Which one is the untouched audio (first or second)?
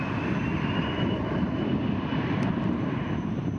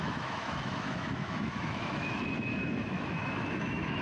first